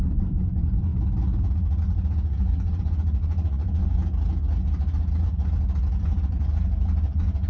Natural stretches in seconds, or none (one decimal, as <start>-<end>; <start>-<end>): 0.9-1.8; 4.0-6.0